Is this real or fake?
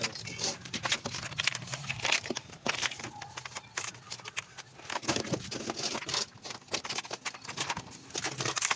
real